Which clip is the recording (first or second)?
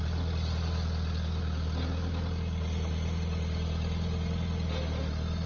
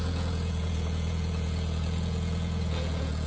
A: first